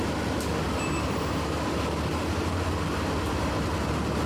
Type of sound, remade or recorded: recorded